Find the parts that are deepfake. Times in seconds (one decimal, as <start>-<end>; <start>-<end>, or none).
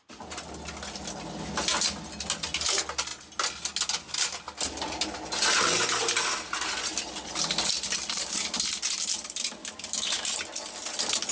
9.6-10.3